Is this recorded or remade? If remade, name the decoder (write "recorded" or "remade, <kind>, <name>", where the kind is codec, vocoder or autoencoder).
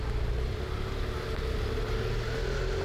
recorded